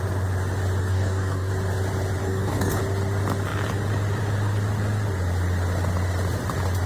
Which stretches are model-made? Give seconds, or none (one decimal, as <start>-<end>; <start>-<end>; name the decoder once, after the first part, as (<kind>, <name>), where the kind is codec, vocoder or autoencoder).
0.8-1.5 (codec, DAC); 2.2-2.8